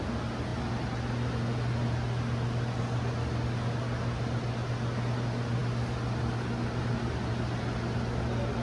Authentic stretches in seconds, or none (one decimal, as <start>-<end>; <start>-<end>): 0.0-8.6